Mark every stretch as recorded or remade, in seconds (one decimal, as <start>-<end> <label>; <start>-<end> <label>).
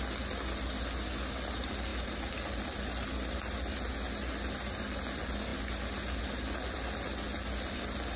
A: 0.0-8.2 recorded